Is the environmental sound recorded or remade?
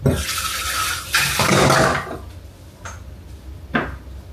recorded